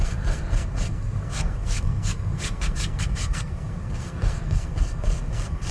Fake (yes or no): yes